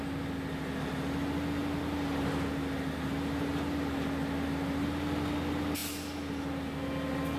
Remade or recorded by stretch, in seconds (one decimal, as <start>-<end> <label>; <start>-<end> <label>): 0.0-7.4 recorded